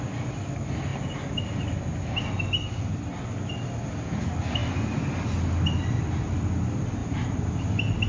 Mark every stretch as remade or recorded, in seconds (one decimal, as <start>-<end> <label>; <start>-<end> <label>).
0.0-7.0 recorded; 7.0-7.5 remade; 7.5-8.1 recorded